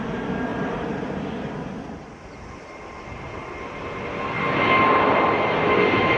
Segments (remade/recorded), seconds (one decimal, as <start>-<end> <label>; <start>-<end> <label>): 0.0-0.5 recorded; 0.5-2.1 remade; 2.1-6.2 recorded